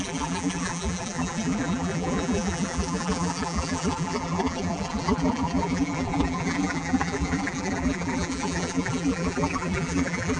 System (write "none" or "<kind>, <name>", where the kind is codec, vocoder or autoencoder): vocoder, BigVGAN v2